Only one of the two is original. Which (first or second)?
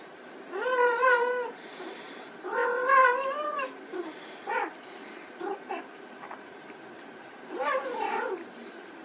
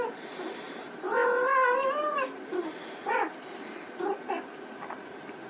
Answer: second